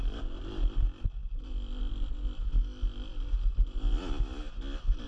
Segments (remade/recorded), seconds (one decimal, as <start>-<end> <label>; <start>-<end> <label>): 0.0-5.1 recorded